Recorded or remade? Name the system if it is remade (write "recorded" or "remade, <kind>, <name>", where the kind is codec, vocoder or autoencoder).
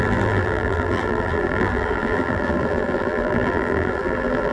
remade, vocoder, BigVGAN v2